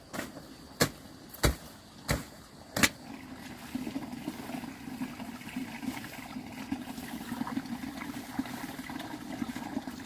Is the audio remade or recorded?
recorded